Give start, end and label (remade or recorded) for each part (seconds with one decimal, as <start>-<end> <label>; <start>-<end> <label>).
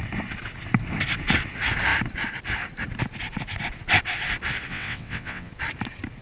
0.0-4.7 recorded; 4.7-5.5 remade; 5.5-6.2 recorded